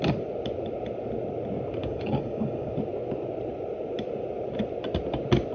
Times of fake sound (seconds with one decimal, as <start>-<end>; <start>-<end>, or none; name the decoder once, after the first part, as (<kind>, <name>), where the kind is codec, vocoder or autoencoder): 1.8-2.7 (codec, DAC)